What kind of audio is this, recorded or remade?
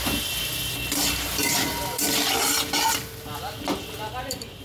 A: remade